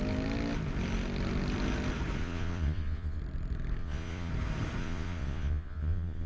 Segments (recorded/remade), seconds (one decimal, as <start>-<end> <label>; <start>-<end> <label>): 0.0-2.2 recorded; 2.2-3.2 remade; 3.2-3.8 recorded; 3.8-4.3 remade; 4.3-4.8 recorded; 4.8-6.3 remade